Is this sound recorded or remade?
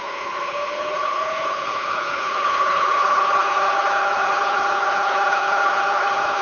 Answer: remade